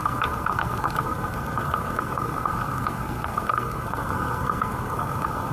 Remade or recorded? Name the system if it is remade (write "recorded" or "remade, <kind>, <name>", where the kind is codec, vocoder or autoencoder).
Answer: remade, codec, SNAC